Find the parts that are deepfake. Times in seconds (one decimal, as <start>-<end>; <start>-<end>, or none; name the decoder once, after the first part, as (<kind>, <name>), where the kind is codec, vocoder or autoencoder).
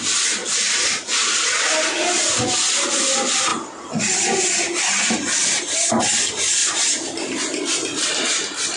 none